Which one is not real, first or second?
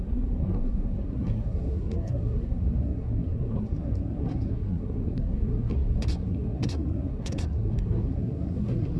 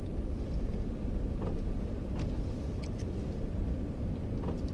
first